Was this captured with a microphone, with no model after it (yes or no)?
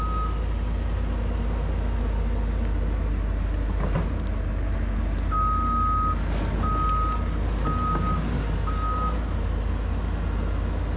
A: yes